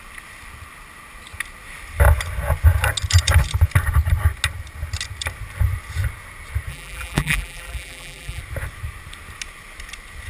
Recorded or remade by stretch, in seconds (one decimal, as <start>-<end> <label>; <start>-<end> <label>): 0.0-6.7 recorded; 6.7-8.4 remade; 8.4-10.3 recorded